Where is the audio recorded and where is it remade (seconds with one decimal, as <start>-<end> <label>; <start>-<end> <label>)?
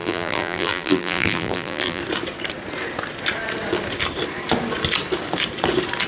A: 0.0-2.0 remade; 2.0-6.1 recorded